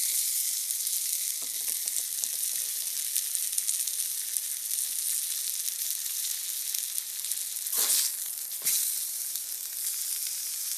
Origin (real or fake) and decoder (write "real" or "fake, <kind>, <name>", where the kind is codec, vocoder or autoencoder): real